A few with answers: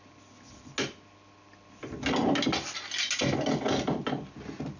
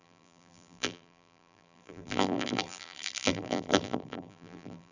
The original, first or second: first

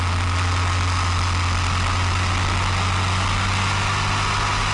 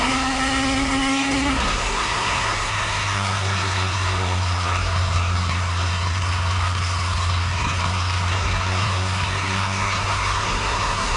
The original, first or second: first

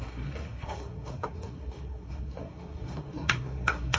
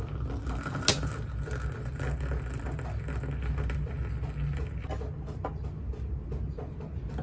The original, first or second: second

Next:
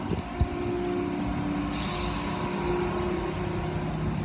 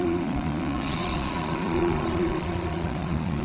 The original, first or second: first